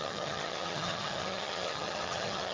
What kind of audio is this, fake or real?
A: fake